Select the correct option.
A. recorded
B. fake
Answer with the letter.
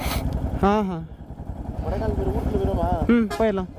A